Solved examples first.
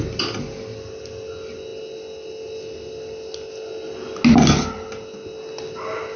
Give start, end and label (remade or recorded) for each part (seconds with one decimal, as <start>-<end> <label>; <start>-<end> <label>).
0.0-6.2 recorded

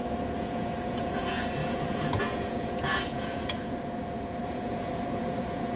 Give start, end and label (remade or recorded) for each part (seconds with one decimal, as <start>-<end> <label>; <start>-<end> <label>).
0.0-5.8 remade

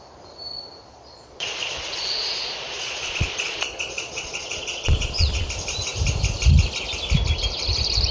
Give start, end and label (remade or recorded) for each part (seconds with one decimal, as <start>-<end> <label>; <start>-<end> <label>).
0.0-0.9 recorded; 0.9-5.5 remade; 5.5-8.1 recorded

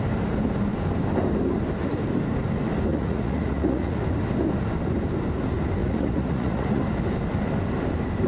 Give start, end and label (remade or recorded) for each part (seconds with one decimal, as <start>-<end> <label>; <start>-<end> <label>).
0.0-2.9 recorded; 2.9-4.0 remade; 4.0-5.8 recorded; 5.8-6.8 remade; 6.8-8.3 recorded

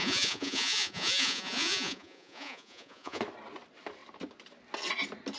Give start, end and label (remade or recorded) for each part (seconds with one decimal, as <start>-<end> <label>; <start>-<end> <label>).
0.0-3.2 remade; 3.2-5.4 recorded

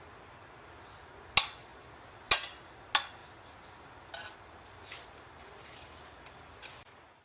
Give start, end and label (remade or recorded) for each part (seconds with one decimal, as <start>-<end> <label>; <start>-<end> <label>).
0.0-7.2 recorded

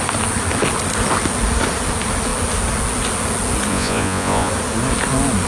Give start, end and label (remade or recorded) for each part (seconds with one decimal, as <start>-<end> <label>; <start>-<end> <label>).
0.0-3.7 recorded; 3.7-4.5 remade; 4.5-5.5 recorded

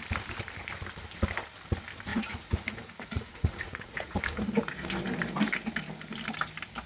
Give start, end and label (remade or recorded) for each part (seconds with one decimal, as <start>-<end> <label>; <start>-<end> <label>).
0.0-2.1 recorded; 2.1-4.4 remade; 4.4-6.9 recorded